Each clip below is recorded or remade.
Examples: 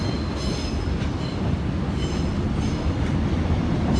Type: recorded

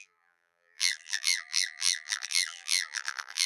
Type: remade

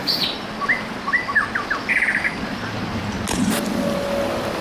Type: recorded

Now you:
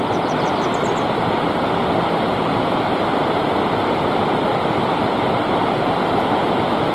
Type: remade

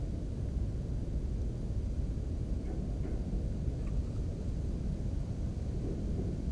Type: recorded